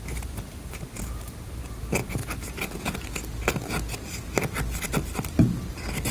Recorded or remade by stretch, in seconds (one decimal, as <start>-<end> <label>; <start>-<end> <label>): 0.0-2.2 remade; 2.2-6.1 recorded